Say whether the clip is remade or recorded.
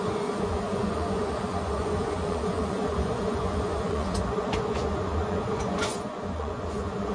remade